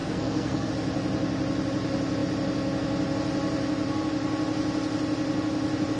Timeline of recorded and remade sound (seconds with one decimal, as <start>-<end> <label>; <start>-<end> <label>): 0.0-0.7 remade; 0.7-6.0 recorded